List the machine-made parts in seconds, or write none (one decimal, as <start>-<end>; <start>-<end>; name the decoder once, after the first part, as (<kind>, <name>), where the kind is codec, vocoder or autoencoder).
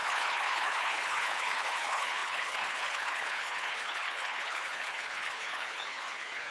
0.0-6.5 (codec, HILCodec)